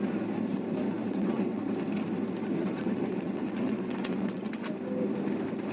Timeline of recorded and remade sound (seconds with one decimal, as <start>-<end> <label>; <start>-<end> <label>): 0.0-1.0 recorded; 1.0-1.6 remade; 1.6-2.6 recorded; 2.6-4.5 remade; 4.5-5.7 recorded